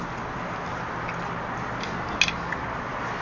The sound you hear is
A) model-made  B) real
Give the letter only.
B